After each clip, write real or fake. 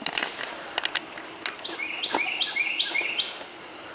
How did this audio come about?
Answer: real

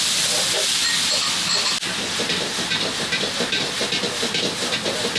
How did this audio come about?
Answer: real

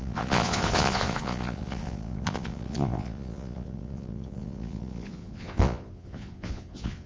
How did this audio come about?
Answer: fake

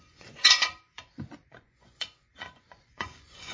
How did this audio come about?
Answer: fake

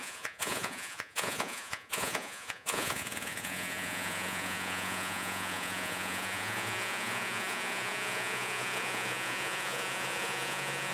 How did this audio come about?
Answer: fake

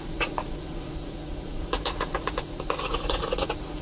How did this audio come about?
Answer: fake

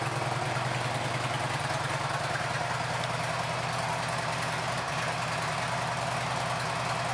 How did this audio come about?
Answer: real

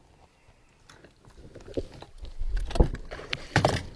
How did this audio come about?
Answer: real